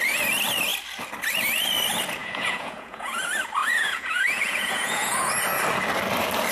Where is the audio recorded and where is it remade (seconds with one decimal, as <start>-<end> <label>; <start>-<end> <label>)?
0.0-2.2 recorded; 2.2-3.2 remade; 3.2-3.6 recorded; 3.6-5.3 remade; 5.3-6.5 recorded